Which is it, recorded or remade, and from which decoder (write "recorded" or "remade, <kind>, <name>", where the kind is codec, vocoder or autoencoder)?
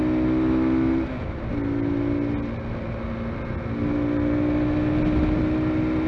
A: recorded